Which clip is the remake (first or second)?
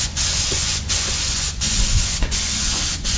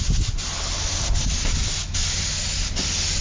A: first